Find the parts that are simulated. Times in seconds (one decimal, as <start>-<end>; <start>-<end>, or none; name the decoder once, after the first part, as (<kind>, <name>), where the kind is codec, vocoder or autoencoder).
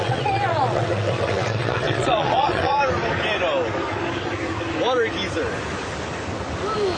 0.0-2.8 (vocoder, WaveNeXt)